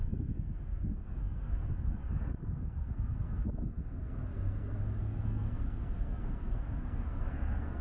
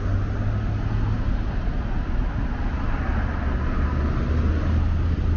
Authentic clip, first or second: second